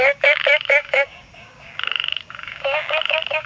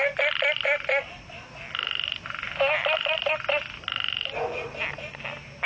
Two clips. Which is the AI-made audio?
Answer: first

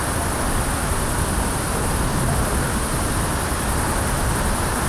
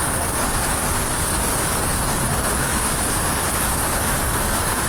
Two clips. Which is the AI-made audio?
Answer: second